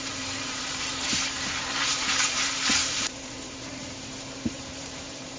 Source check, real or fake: fake